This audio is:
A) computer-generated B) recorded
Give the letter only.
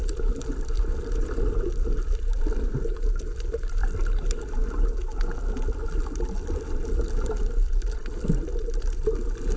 B